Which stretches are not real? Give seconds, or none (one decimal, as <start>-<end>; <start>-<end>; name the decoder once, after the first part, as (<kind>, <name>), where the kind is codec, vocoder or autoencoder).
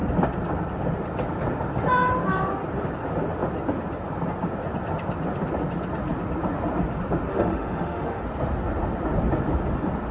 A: 7.3-8.2 (autoencoder, DAC-VAE)